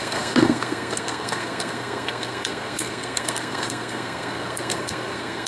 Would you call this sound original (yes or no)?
no